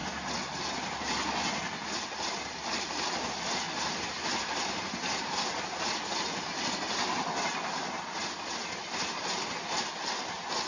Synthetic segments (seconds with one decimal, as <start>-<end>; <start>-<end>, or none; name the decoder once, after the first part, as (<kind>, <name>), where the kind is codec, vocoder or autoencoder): none